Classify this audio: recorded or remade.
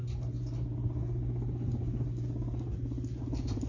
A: recorded